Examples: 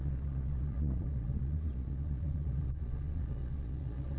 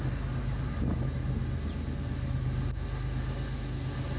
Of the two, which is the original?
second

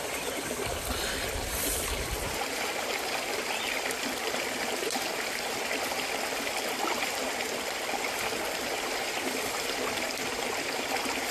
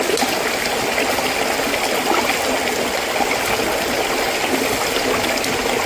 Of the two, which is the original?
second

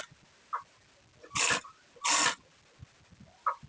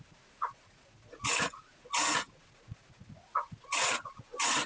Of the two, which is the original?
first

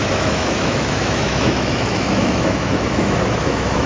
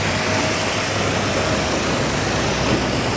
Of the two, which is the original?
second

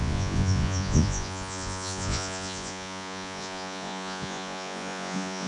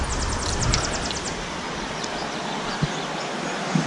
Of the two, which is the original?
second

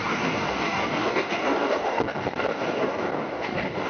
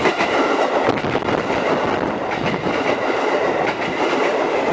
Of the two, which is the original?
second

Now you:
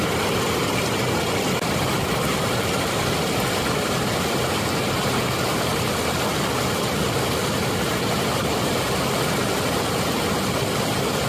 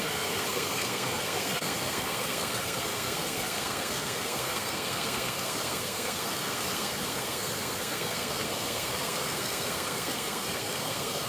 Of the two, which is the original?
first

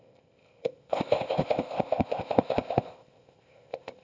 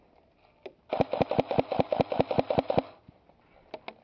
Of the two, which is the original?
second